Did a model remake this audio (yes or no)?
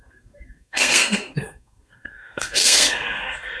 yes